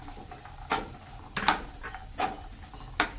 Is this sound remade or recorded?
recorded